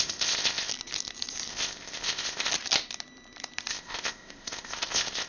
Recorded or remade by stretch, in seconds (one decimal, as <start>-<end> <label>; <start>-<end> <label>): 0.0-0.7 remade; 0.7-1.5 recorded; 1.5-2.5 remade; 2.5-3.7 recorded; 3.7-5.3 remade